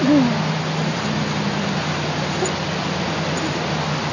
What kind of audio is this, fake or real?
real